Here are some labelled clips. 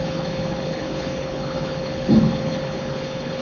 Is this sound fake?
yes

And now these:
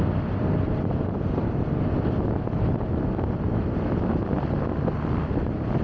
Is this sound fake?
no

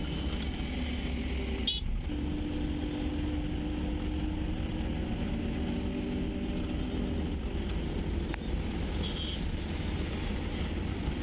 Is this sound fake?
no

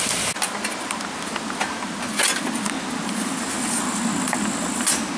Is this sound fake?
no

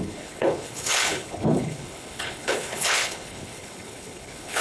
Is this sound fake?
yes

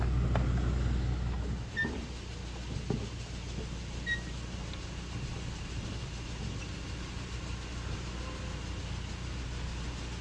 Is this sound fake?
no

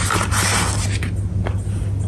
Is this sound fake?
no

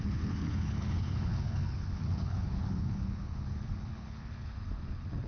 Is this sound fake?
yes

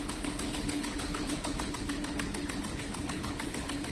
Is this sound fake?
yes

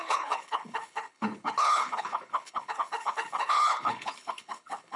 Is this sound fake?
yes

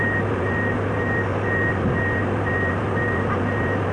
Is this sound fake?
no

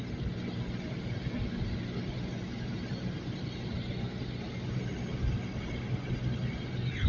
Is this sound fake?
no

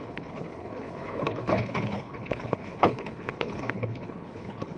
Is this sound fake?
yes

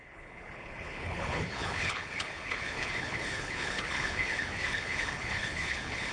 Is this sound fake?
yes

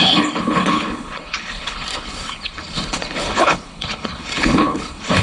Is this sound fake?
yes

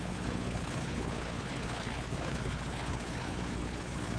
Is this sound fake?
yes